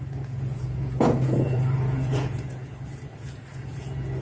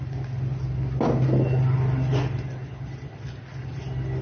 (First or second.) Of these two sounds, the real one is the second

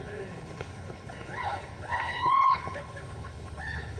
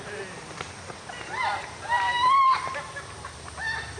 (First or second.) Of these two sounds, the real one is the second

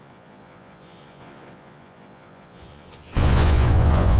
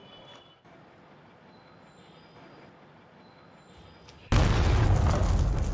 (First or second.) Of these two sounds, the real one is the second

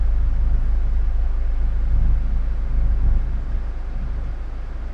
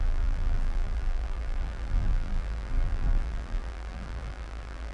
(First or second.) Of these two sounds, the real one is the first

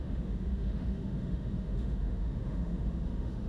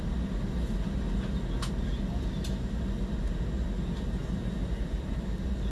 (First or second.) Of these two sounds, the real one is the second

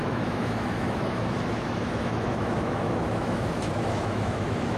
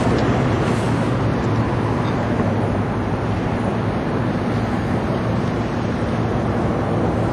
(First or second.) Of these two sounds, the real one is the second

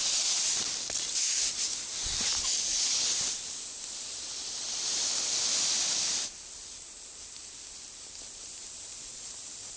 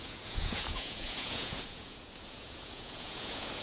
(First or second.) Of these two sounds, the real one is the first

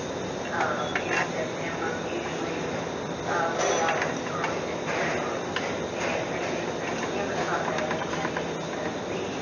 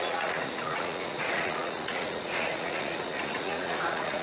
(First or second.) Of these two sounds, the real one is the first